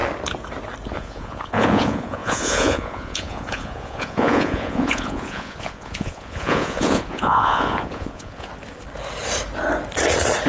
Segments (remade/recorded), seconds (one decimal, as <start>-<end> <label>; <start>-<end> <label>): 0.0-0.9 recorded; 0.9-8.5 remade; 8.5-10.5 recorded